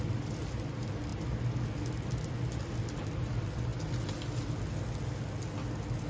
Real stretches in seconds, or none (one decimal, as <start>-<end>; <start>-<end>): 0.0-6.1